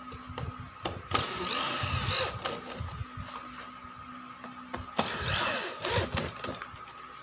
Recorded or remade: recorded